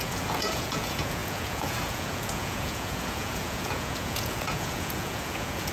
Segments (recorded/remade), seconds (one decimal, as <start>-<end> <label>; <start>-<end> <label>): 0.0-5.7 remade